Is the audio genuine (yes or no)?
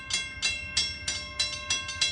yes